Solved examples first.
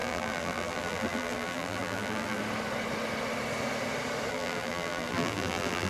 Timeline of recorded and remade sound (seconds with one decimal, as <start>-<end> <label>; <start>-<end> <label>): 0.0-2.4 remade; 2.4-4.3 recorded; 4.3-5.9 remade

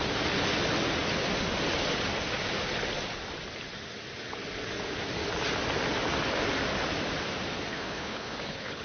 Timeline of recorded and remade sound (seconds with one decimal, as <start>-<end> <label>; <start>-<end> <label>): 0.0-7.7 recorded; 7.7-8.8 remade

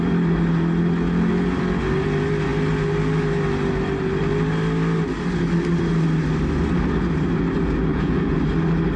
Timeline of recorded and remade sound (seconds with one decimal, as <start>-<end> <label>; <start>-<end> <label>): 0.0-7.9 recorded; 7.9-8.4 remade; 8.4-9.0 recorded

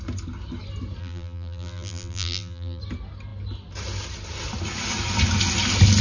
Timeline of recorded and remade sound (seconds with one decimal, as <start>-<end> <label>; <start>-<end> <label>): 0.0-1.0 recorded; 1.0-2.8 remade; 2.8-6.0 recorded

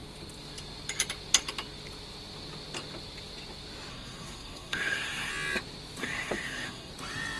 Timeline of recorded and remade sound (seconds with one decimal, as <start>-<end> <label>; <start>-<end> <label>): 0.0-3.9 recorded; 3.9-5.3 remade; 5.3-6.0 recorded; 6.0-6.9 remade; 6.9-7.4 recorded

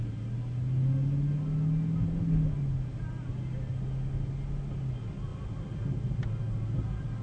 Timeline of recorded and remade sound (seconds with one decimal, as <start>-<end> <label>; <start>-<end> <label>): 0.0-7.2 recorded